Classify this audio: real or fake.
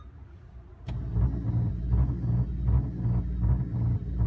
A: real